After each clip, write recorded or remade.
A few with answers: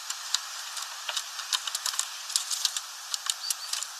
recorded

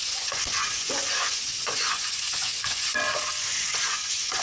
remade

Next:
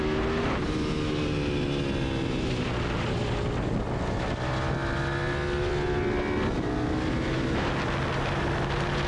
recorded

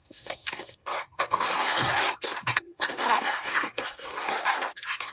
remade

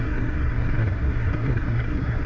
remade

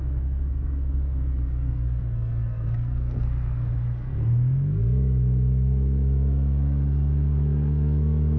remade